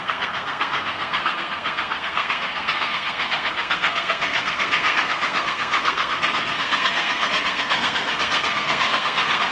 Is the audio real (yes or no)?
no